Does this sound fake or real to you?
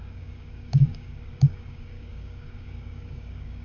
fake